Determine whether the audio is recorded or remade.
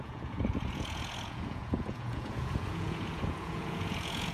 remade